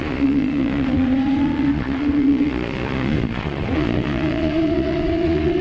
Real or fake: fake